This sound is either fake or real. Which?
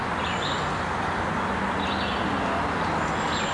real